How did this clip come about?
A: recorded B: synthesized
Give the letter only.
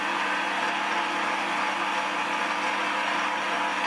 A